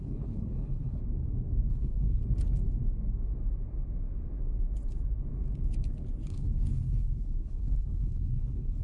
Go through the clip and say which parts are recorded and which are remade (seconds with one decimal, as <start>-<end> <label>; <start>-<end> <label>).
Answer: 0.0-1.0 remade; 1.0-1.7 recorded; 1.7-2.2 remade; 2.2-6.3 recorded; 6.3-8.8 remade